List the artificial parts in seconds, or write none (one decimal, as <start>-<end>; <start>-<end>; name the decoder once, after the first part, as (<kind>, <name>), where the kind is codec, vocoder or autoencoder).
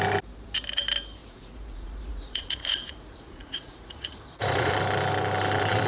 1.2-4.7 (vocoder, Vocos)